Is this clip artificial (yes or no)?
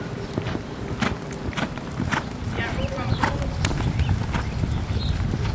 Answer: yes